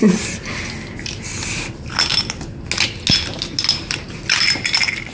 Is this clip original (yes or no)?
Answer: yes